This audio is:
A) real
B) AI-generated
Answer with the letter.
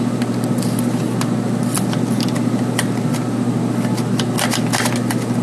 B